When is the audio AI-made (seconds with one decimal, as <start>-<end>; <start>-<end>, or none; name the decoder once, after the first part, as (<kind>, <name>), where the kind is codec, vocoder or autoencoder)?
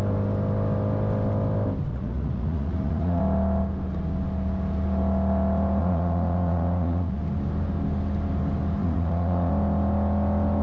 1.9-3.2 (vocoder, Vocos); 5.8-7.2; 8.8-9.5